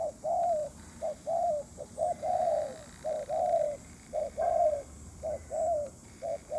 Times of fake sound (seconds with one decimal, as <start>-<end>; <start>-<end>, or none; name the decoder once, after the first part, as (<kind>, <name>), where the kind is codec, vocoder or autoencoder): 0.0-2.7 (vocoder, BigVGAN v2); 3.6-6.6